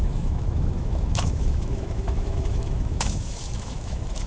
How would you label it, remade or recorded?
remade